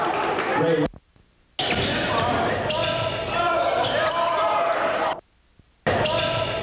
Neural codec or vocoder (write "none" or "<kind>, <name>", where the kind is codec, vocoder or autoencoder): none